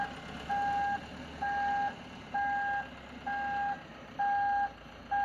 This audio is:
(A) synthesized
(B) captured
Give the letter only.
B